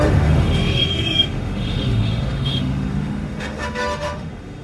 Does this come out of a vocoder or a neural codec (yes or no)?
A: yes